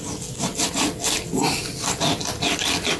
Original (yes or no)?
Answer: yes